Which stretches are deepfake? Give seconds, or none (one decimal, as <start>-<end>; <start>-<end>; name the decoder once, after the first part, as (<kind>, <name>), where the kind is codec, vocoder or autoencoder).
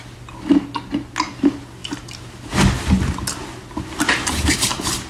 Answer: none